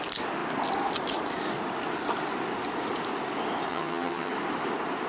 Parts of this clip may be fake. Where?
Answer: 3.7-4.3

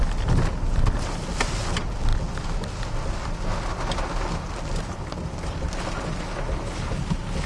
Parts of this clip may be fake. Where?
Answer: none

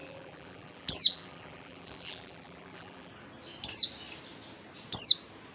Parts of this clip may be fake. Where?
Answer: 0.0-3.1

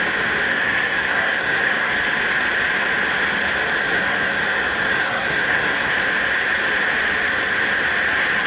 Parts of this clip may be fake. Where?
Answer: 0.5-1.9; 3.8-4.4; 4.9-5.9

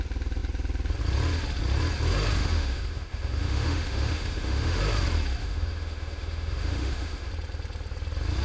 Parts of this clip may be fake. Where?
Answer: 2.4-4.8; 5.4-7.3

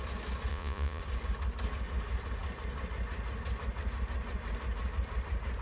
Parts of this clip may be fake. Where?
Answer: 0.5-1.0